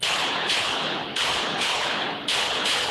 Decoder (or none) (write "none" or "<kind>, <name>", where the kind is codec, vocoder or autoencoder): codec, HILCodec